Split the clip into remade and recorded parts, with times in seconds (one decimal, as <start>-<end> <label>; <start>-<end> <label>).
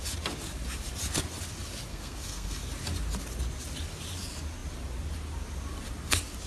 0.0-1.9 recorded; 1.9-2.6 remade; 2.6-6.5 recorded